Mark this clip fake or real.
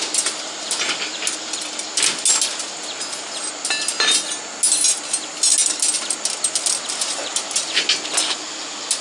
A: real